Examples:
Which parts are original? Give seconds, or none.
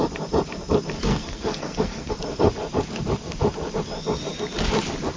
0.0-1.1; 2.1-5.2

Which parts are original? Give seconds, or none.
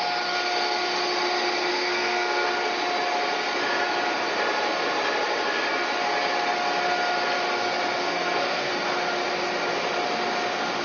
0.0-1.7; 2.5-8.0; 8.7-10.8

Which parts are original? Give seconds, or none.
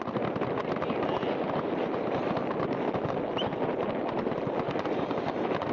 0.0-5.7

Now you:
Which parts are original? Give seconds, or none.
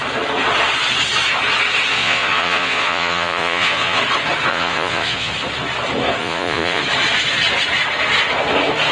0.0-1.9; 4.0-4.5; 5.3-6.2; 6.8-8.9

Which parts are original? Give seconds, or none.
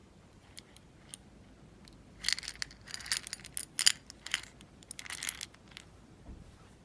1.0-6.8